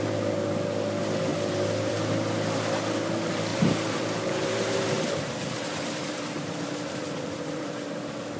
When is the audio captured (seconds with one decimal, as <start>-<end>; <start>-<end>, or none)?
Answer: 0.0-3.5; 8.0-8.4